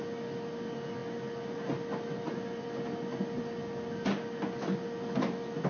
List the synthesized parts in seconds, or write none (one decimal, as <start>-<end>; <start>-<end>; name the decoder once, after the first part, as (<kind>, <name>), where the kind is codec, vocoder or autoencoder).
none